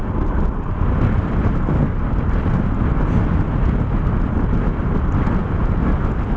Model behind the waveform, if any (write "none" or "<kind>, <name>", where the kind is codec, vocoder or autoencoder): none